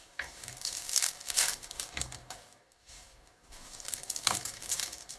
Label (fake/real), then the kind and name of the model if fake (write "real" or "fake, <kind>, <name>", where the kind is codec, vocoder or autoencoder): fake, codec, DAC